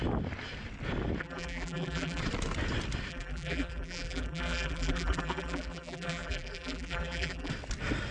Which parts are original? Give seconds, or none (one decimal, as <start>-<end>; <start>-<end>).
0.0-1.2; 2.2-3.1; 7.5-8.1